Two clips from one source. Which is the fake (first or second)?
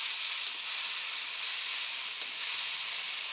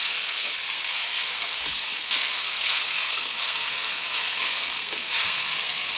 second